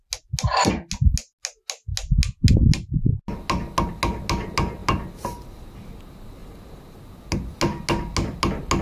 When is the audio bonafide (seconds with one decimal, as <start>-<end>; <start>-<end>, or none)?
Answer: 0.0-8.8